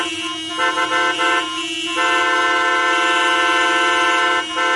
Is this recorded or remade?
recorded